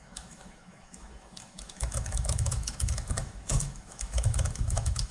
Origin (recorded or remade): remade